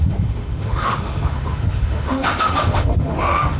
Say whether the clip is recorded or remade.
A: remade